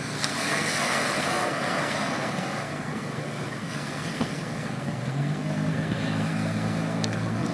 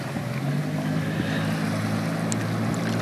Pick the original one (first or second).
second